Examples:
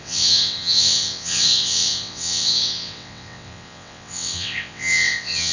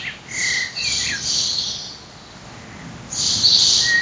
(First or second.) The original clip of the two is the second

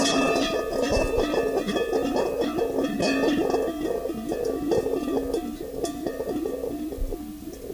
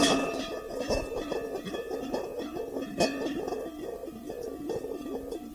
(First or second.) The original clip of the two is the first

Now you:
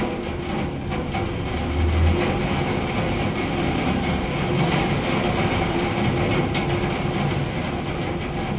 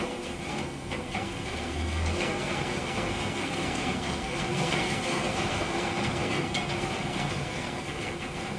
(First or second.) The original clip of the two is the first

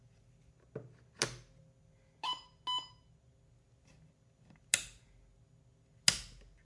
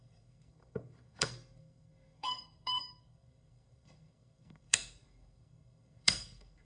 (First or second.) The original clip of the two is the first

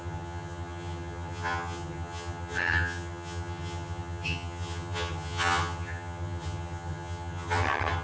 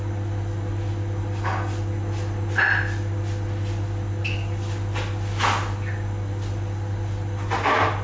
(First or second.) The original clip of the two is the second